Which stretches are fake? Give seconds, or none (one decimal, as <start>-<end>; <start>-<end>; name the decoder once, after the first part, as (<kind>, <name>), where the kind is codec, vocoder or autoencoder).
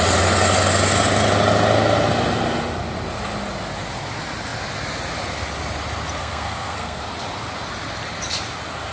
6.2-7.0 (codec, SNAC)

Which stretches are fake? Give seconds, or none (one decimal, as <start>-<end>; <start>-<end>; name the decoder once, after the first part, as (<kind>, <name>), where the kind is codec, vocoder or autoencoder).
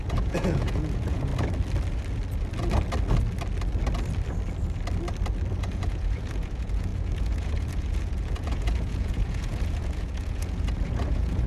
0.0-1.3 (vocoder, Vocos); 5.6-11.5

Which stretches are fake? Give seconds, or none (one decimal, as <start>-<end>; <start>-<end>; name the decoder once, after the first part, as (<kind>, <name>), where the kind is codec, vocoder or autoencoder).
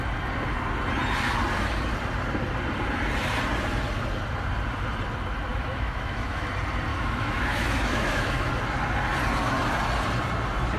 5.5-6.5 (autoencoder, DAC-VAE); 6.9-8.5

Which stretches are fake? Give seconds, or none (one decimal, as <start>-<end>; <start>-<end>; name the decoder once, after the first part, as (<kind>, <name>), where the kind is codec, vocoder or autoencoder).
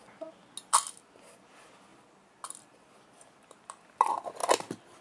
none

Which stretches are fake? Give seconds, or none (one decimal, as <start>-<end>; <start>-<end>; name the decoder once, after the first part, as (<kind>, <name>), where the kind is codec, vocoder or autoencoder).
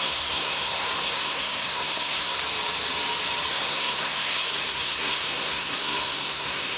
0.0-2.4 (codec, SNAC); 3.5-6.8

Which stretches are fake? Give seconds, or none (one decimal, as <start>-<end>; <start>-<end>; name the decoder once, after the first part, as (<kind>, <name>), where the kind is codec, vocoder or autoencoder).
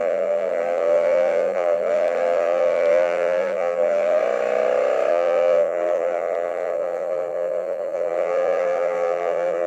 0.0-4.2 (vocoder, BigVGAN v2); 5.1-9.7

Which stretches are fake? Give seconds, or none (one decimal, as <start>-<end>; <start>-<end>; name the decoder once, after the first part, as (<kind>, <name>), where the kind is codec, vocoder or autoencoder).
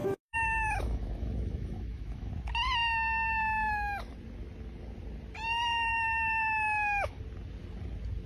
0.0-2.3 (autoencoder, DAC-VAE); 5.9-7.2